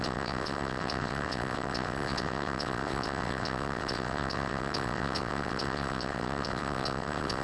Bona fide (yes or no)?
no